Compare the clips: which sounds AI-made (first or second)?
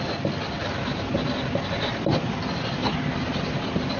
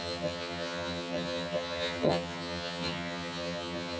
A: second